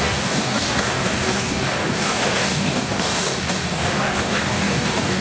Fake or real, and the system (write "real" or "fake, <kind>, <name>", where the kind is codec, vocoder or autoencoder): fake, codec, DAC